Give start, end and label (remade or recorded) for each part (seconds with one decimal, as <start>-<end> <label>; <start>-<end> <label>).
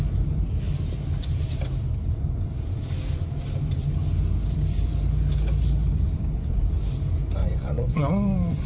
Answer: 0.0-7.4 recorded; 7.4-8.7 remade